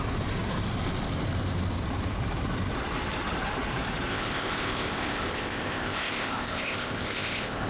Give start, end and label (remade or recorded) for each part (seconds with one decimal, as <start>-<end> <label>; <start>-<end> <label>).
0.0-4.1 recorded; 4.1-7.7 remade